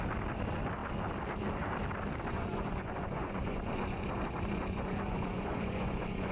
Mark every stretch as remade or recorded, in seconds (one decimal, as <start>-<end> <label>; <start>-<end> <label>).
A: 0.0-2.3 recorded; 2.3-6.3 remade